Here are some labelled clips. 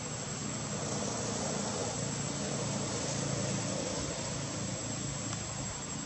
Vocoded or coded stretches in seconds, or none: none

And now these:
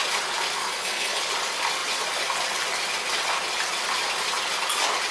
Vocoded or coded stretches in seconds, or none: 0.6-1.2

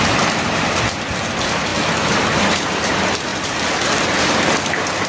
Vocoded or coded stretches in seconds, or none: 3.3-4.1

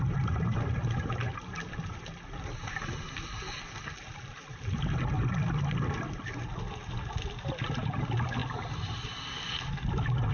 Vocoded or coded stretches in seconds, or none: none

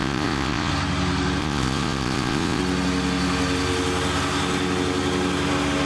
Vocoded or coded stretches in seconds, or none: 0.0-0.7; 1.4-2.6